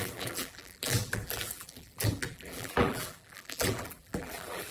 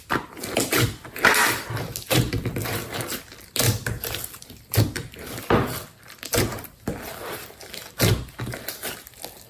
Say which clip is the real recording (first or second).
second